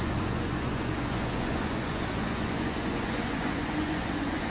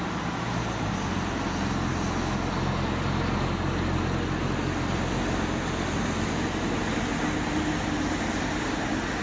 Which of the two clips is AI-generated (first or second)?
first